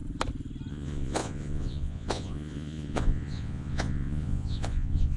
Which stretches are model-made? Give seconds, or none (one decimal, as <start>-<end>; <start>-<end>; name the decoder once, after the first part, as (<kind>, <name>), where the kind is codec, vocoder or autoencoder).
0.7-5.2 (vocoder, Vocos)